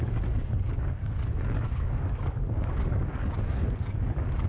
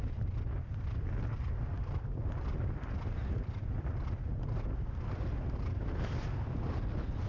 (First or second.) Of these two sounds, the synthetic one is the first